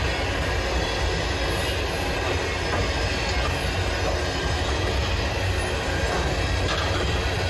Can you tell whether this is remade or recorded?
recorded